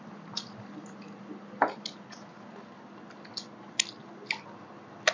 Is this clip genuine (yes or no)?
yes